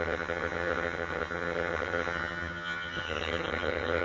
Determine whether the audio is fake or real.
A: fake